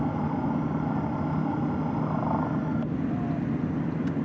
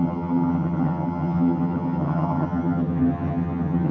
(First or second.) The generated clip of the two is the second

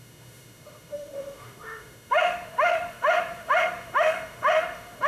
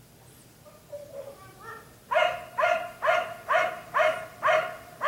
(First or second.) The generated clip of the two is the first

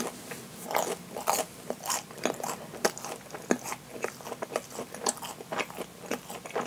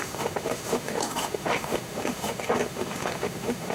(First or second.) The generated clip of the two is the second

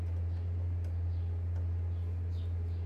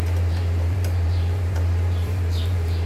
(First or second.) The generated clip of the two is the second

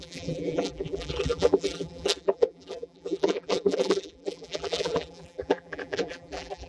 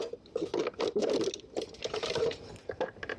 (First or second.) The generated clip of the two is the first